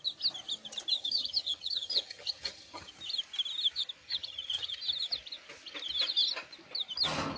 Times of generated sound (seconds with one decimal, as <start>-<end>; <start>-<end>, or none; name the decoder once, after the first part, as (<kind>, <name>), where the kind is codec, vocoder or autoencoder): 1.0-2.9 (vocoder, HiFi-GAN); 4.0-4.8